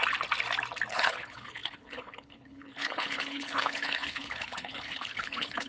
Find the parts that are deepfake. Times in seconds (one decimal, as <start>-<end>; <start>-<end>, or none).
0.9-5.7